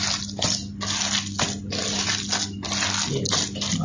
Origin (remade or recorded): recorded